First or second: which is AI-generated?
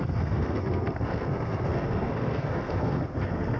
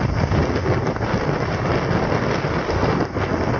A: first